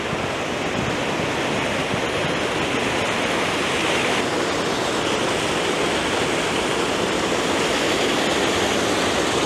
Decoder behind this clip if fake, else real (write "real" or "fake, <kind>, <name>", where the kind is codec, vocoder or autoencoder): real